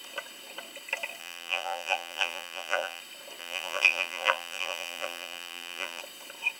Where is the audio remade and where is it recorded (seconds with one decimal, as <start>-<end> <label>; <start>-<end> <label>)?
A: 0.0-1.2 recorded; 1.2-3.0 remade; 3.0-3.4 recorded; 3.4-6.0 remade; 6.0-6.6 recorded